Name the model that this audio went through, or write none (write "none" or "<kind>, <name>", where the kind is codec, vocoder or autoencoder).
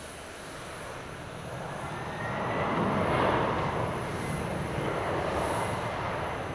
none